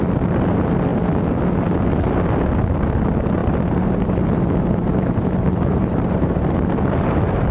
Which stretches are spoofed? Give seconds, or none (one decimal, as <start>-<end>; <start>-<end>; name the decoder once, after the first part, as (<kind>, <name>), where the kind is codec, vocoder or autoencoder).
3.4-7.5 (vocoder, BigVGAN v2)